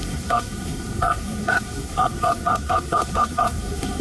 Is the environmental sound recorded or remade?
remade